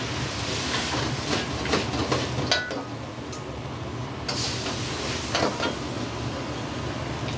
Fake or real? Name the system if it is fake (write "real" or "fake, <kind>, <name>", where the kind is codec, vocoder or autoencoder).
real